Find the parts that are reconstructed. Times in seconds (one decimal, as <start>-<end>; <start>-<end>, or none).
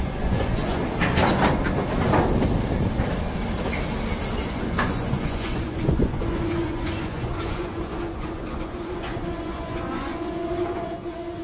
0.0-0.8; 4.5-11.4